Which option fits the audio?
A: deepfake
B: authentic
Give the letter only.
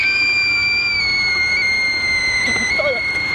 B